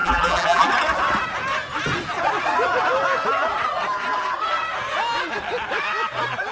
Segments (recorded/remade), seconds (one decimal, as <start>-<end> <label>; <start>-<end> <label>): 0.0-0.7 remade; 0.7-6.5 recorded

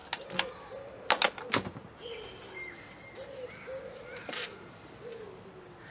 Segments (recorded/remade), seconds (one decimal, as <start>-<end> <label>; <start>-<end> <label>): 0.0-5.9 recorded